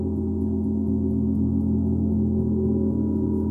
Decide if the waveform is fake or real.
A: real